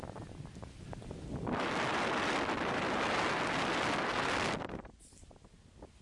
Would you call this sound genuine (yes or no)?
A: yes